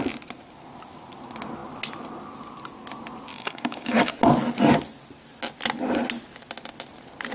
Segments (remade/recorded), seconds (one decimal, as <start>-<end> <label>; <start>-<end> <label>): 0.0-3.3 recorded; 3.3-4.1 remade; 4.1-7.3 recorded